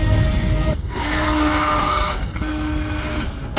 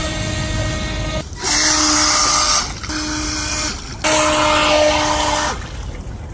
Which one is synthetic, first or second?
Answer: first